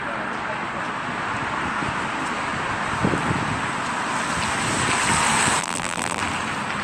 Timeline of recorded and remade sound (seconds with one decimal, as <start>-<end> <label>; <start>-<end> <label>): 0.0-5.6 recorded; 5.6-6.2 remade; 6.2-6.8 recorded